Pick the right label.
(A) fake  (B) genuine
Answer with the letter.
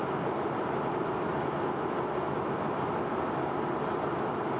B